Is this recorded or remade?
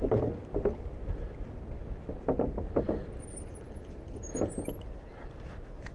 recorded